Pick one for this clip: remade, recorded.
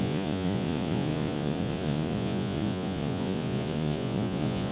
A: remade